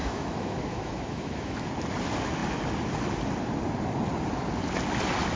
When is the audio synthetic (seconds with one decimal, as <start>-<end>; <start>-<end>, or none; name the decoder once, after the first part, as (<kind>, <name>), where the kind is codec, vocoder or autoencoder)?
0.0-1.7 (autoencoder, DAC-VAE)